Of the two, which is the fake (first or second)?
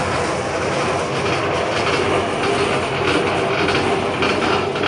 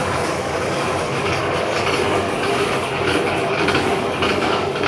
second